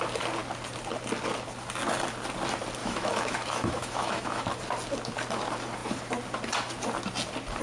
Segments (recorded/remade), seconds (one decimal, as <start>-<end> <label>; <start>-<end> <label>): 0.0-2.8 recorded; 2.8-4.5 remade; 4.5-7.6 recorded